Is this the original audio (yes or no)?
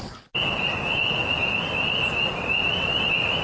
yes